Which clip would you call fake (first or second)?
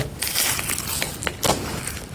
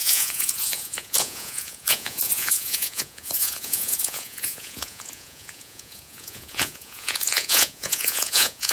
second